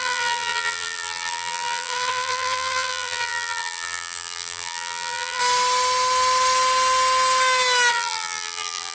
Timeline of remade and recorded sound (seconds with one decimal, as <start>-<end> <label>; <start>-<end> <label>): 0.0-5.4 remade; 5.4-7.9 recorded; 7.9-8.9 remade